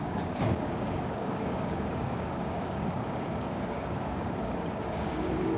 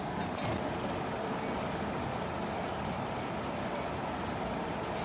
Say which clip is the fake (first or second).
first